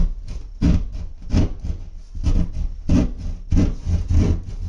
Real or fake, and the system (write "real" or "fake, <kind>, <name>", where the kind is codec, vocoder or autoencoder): real